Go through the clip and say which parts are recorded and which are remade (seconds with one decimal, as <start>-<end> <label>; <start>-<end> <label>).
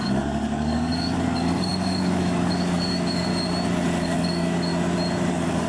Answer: 0.0-3.3 remade; 3.3-4.0 recorded; 4.0-4.7 remade; 4.7-5.3 recorded; 5.3-5.7 remade